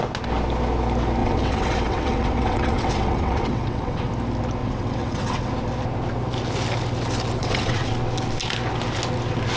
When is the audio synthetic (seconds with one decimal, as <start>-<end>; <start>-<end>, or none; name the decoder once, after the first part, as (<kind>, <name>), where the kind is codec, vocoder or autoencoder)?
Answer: 1.2-4.1 (vocoder, WaveNeXt); 4.6-5.5; 7.4-7.9